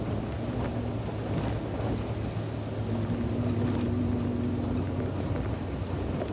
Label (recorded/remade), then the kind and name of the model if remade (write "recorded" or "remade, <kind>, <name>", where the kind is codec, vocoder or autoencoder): recorded